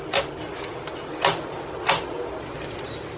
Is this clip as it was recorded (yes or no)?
yes